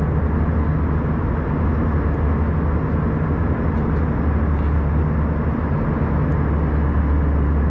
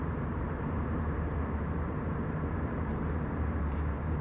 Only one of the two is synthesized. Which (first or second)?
second